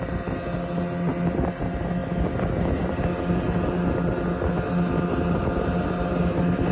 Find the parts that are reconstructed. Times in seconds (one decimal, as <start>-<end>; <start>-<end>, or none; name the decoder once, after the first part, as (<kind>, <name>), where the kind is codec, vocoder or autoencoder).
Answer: none